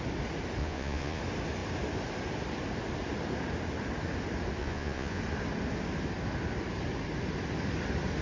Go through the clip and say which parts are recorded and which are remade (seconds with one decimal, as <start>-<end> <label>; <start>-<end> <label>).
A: 0.0-0.6 recorded; 0.6-1.2 remade; 1.2-4.6 recorded; 4.6-5.2 remade; 5.2-8.2 recorded

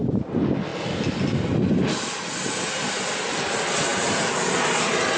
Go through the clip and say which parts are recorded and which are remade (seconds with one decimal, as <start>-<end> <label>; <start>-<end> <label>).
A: 0.0-5.2 recorded

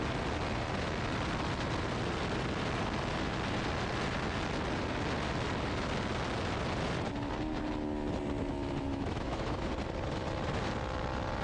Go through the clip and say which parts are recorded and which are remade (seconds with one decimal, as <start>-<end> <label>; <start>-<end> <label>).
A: 0.0-8.9 recorded; 8.9-9.7 remade; 9.7-11.4 recorded